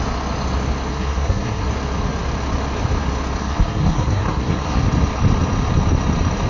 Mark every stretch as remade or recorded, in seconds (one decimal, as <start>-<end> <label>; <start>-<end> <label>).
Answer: 0.0-0.9 recorded; 0.9-1.7 remade; 1.7-3.4 recorded; 3.4-4.8 remade; 4.8-6.5 recorded

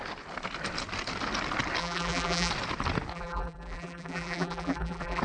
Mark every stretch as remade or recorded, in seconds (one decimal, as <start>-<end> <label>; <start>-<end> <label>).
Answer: 0.0-1.8 recorded; 1.8-2.5 remade; 2.5-3.1 recorded; 3.1-5.2 remade